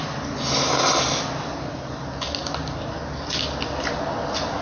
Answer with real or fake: real